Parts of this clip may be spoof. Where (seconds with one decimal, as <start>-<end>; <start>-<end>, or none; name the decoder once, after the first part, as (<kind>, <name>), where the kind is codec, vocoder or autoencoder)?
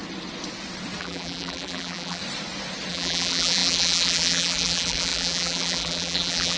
1.0-2.2 (vocoder, BigVGAN v2); 2.9-6.6